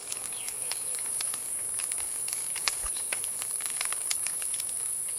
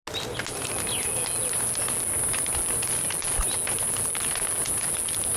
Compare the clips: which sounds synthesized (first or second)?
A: first